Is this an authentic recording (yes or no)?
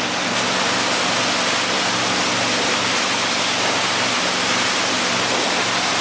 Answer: yes